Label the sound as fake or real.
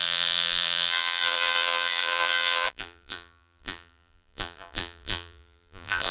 fake